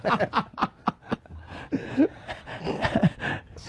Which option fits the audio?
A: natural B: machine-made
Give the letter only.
A